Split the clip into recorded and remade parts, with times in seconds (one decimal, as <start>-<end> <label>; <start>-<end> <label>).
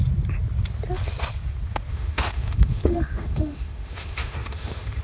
0.0-1.9 recorded; 1.9-5.0 remade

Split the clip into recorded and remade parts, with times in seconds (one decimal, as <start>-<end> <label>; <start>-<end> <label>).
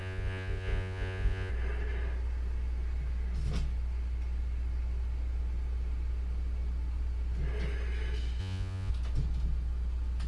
0.0-1.5 remade; 1.5-8.4 recorded; 8.4-8.9 remade; 8.9-10.3 recorded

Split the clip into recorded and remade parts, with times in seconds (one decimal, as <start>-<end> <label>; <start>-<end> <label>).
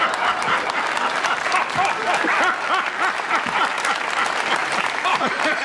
0.0-4.6 recorded; 4.6-5.6 remade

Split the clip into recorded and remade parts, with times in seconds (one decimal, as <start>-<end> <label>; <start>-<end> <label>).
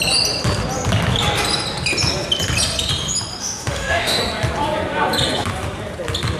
0.0-3.4 recorded; 3.4-4.2 remade; 4.2-6.4 recorded